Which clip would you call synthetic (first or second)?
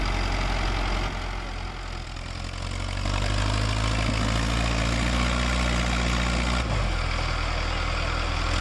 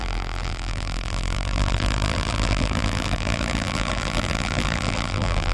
second